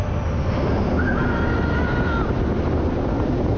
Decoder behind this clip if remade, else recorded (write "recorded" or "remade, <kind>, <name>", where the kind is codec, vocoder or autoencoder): recorded